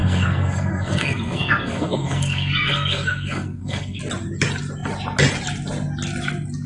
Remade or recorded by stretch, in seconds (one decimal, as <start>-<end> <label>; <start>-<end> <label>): 0.0-4.0 remade; 4.0-6.7 recorded